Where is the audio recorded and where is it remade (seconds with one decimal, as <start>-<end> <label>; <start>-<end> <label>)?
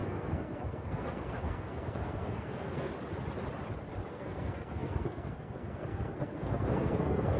0.0-2.9 remade; 2.9-4.1 recorded; 4.1-7.4 remade